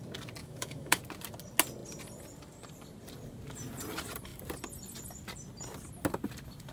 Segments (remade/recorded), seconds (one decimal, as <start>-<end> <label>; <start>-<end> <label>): 0.0-0.4 recorded; 0.4-1.0 remade; 1.0-6.7 recorded